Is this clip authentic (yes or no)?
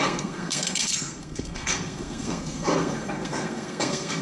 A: no